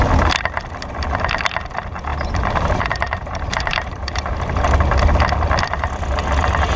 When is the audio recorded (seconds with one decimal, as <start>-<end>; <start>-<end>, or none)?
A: 0.0-2.1; 4.8-6.8